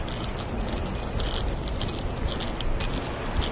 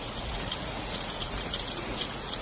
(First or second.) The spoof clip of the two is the second